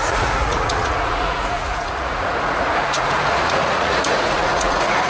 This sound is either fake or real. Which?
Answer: fake